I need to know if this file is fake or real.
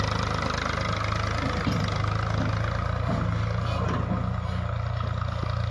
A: real